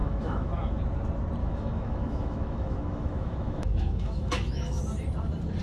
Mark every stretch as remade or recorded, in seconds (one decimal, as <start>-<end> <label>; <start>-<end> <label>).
0.0-0.8 remade; 0.8-1.4 recorded; 1.4-4.8 remade; 4.8-5.6 recorded